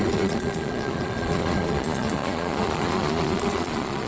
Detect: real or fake fake